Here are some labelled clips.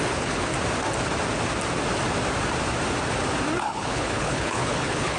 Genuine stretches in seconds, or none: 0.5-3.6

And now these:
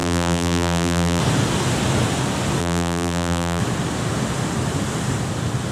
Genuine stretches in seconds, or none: 1.2-2.6; 3.6-5.7

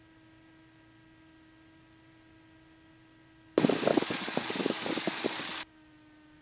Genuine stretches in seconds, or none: 0.0-3.9; 5.5-6.4

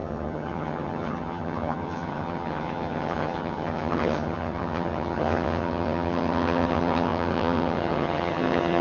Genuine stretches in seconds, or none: none